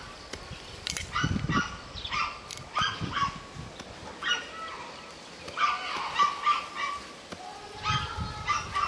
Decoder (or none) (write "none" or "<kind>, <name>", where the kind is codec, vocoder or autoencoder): none